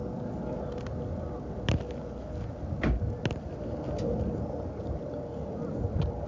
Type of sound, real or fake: real